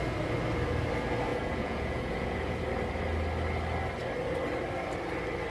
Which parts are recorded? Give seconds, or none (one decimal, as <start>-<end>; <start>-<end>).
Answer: 0.0-1.3; 2.6-5.5